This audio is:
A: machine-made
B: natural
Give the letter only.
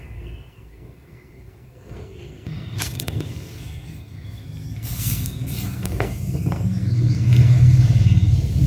A